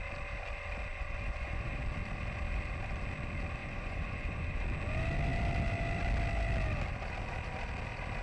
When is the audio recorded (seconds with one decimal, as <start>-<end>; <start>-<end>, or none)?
0.0-0.9; 1.8-3.6; 4.6-8.2